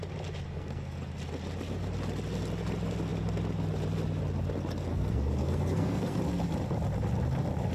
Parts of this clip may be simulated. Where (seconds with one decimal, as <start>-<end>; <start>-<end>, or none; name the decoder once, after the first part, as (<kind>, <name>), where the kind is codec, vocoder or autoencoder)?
0.5-1.1 (codec, SNAC); 4.9-6.2